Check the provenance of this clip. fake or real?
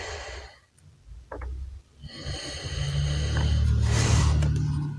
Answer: real